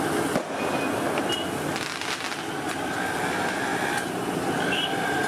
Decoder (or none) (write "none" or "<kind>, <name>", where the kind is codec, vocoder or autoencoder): none